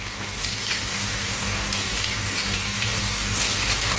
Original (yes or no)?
no